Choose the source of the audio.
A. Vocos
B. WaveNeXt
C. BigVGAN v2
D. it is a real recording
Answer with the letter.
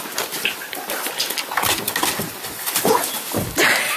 D